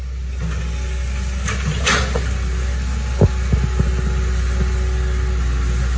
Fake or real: real